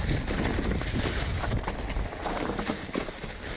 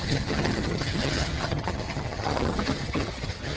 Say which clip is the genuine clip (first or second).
first